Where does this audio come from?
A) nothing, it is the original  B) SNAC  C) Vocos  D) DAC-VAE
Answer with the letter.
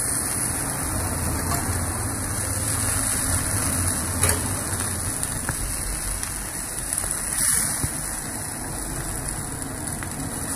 A